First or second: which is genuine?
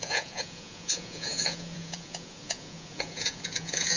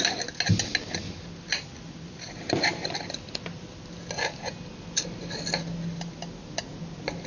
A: second